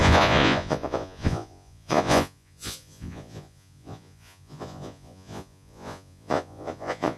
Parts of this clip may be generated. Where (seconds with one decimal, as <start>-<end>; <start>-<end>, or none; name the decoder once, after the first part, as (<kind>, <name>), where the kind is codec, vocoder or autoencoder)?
0.0-7.2 (vocoder, Vocos)